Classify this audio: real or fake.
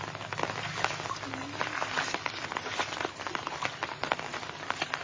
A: real